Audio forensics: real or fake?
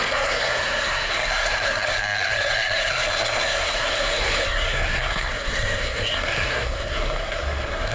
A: fake